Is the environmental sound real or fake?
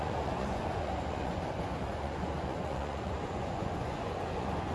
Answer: fake